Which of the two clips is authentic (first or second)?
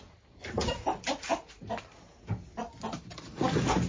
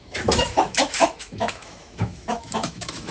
first